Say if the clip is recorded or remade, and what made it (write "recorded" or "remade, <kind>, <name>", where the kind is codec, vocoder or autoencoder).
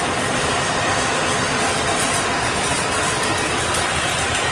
recorded